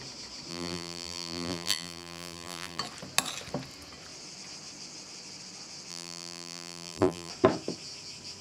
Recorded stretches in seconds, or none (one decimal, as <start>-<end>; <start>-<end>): 0.0-0.5; 2.8-5.9; 7.3-8.4